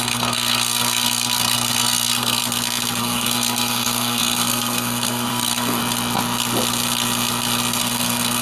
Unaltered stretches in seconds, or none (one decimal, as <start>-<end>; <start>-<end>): 2.4-3.0; 5.8-7.8